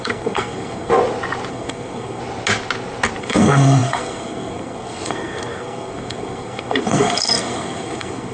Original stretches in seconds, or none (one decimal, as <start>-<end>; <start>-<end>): 0.9-1.5; 2.2-3.2